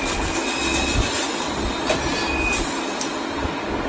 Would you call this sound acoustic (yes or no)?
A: yes